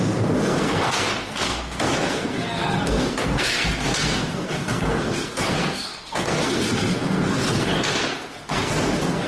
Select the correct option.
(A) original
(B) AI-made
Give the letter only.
B